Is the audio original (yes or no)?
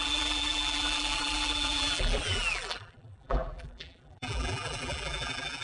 no